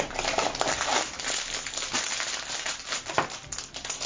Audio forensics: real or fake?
real